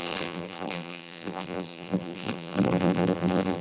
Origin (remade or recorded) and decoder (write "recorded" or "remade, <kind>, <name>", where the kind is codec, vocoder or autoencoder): remade, vocoder, BigVGAN v2